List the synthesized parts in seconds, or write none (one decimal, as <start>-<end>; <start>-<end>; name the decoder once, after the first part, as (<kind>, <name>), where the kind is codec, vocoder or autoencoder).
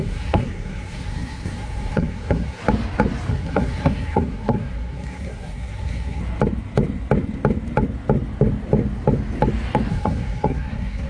0.0-2.6 (codec, SNAC); 3.3-6.2; 9.9-11.1